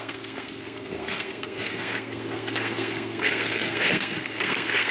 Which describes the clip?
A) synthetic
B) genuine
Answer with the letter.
A